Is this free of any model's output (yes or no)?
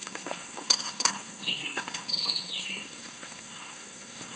no